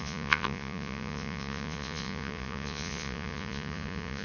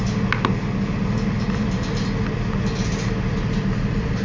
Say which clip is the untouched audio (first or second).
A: second